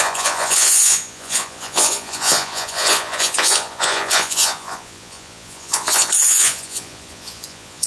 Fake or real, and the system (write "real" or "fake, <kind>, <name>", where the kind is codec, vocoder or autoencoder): fake, vocoder, Vocos